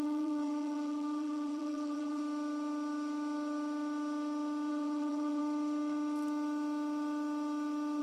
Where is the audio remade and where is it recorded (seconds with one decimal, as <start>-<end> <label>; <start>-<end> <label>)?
0.0-2.2 remade; 2.2-4.7 recorded; 4.7-5.4 remade; 5.4-8.0 recorded

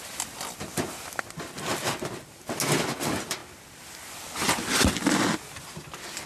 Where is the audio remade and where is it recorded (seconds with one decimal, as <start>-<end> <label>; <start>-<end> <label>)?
0.0-6.3 recorded

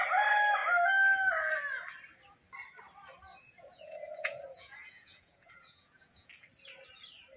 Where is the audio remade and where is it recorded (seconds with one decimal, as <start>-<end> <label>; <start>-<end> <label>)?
0.0-3.3 recorded; 3.3-6.3 remade; 6.3-7.4 recorded

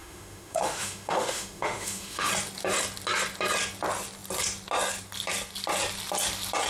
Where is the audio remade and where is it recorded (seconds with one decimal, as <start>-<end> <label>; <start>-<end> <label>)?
0.0-2.3 remade; 2.3-6.7 recorded

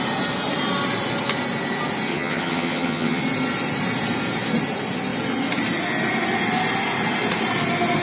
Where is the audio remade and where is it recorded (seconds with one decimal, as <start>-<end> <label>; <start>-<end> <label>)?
0.0-2.1 recorded; 2.1-3.2 remade; 3.2-8.0 recorded

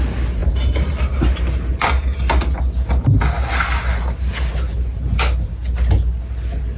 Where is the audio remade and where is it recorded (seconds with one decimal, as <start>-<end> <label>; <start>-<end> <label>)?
0.0-0.4 recorded; 0.4-1.9 remade; 1.9-6.8 recorded

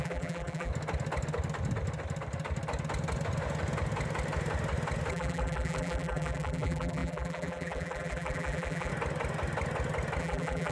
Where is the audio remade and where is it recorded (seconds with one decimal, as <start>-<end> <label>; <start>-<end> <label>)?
0.0-0.7 remade; 0.7-5.1 recorded; 5.1-8.9 remade; 8.9-10.2 recorded; 10.2-10.7 remade